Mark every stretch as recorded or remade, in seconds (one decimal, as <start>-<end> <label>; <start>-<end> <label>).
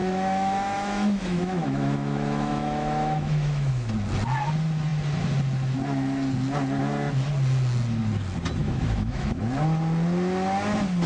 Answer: 0.0-3.9 remade; 3.9-8.6 recorded; 8.6-9.4 remade; 9.4-11.1 recorded